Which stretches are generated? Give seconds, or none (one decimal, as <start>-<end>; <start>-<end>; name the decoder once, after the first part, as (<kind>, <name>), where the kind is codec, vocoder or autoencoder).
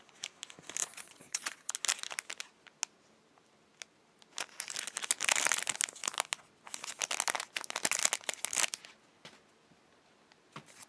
0.8-1.7 (vocoder, Vocos)